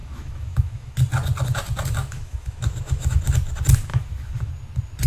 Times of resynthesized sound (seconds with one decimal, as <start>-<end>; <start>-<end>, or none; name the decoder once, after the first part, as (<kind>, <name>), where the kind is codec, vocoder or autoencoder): 0.0-0.9 (autoencoder, DAC-VAE); 2.0-3.2; 3.9-4.5